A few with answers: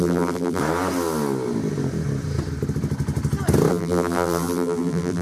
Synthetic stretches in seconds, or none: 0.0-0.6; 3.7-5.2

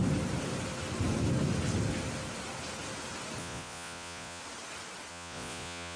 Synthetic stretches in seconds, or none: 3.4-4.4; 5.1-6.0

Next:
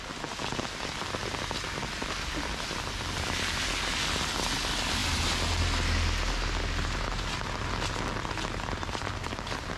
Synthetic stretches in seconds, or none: none